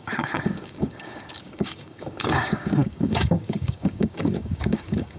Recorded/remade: remade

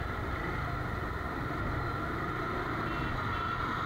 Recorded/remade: recorded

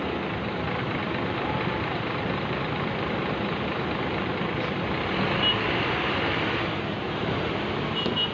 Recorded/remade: recorded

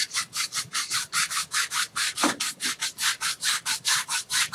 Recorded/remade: remade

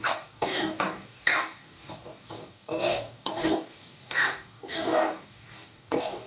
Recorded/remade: remade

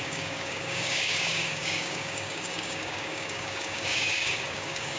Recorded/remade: remade